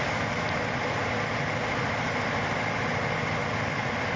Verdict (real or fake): real